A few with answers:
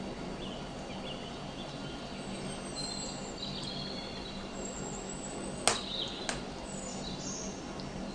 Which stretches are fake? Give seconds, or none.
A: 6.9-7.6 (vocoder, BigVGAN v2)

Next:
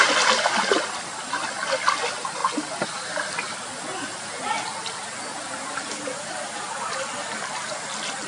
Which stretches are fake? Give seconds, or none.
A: none

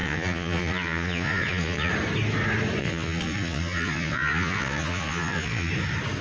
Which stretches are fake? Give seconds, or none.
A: 0.0-1.9 (vocoder, Vocos); 2.8-5.7

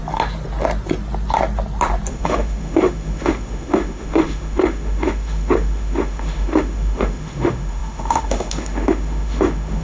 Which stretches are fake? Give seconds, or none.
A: 2.1-9.8 (autoencoder, DAC-VAE)

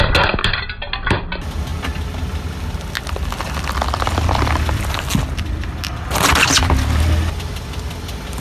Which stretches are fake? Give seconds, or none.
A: none

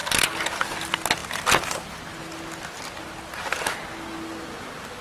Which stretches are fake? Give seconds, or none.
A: none